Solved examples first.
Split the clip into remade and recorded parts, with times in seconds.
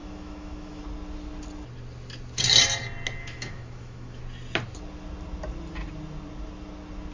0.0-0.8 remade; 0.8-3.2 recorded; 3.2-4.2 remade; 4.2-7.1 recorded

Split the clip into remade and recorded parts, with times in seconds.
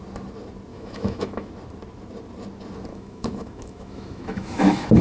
0.0-0.7 recorded; 0.7-1.5 remade; 1.5-2.9 recorded; 2.9-5.0 remade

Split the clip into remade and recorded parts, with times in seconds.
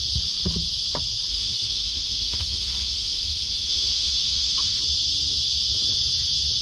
0.0-1.3 recorded; 1.3-4.8 remade; 4.8-6.6 recorded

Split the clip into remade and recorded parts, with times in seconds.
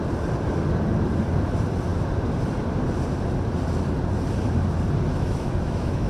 0.0-5.1 recorded; 5.1-6.1 remade